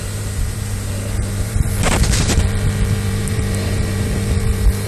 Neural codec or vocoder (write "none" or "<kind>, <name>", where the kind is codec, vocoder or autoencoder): vocoder, BigVGAN v2